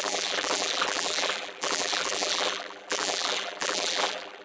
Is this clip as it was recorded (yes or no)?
no